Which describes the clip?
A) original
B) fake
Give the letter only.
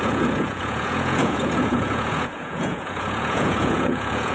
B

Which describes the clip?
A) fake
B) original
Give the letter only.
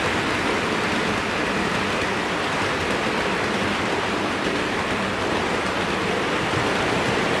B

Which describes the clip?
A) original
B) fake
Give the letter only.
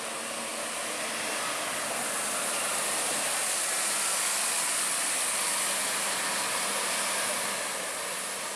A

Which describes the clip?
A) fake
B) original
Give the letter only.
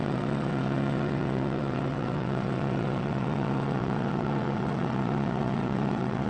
A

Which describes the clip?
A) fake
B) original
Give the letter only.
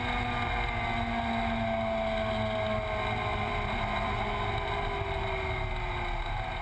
B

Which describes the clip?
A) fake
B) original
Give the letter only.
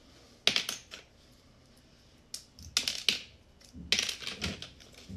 B